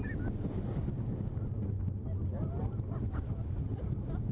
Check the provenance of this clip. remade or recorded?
recorded